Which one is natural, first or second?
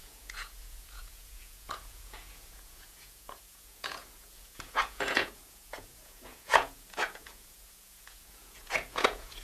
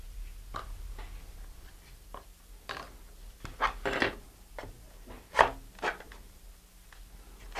second